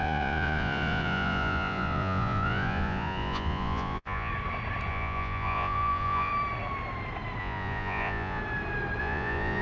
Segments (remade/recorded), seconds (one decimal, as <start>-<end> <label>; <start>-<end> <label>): 0.0-4.3 remade; 4.3-4.9 recorded; 4.9-6.3 remade; 6.3-7.4 recorded; 7.4-8.4 remade; 8.4-9.0 recorded; 9.0-9.6 remade